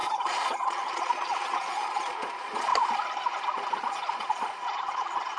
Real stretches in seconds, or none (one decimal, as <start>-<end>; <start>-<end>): 2.7-3.3